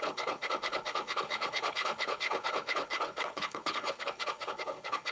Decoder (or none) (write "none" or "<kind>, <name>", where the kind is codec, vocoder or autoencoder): codec, HILCodec